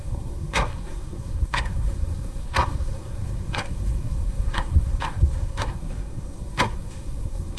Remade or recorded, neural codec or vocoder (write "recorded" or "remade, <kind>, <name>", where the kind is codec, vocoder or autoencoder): remade, codec, SNAC